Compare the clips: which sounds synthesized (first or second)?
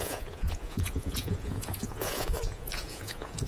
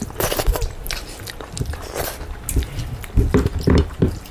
first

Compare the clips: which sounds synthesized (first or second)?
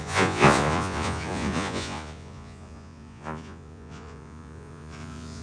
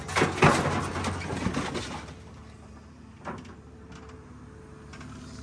first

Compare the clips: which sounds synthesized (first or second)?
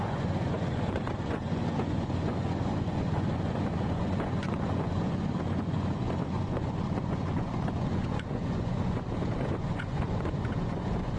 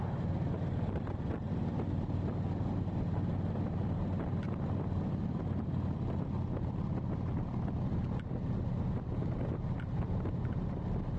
first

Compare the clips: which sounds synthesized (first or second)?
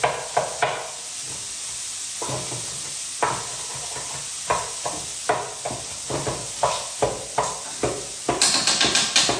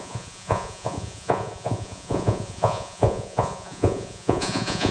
second